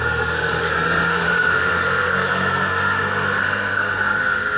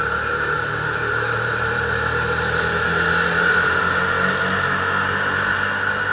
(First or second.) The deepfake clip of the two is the first